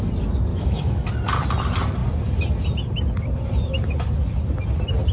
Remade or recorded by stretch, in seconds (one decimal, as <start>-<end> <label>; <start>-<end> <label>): 0.0-0.5 recorded; 0.5-1.1 remade; 1.1-5.1 recorded